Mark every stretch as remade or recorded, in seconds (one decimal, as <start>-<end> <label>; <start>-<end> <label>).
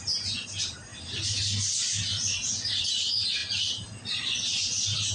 0.0-5.1 recorded